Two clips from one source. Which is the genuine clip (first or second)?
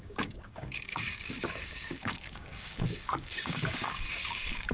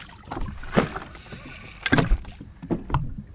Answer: second